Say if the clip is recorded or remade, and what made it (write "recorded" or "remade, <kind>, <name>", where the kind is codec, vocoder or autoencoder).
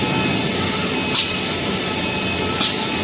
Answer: recorded